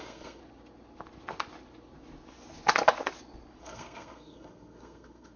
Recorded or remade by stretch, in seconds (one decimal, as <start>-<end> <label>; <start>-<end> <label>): 0.0-0.4 remade; 0.4-3.6 recorded; 3.6-5.4 remade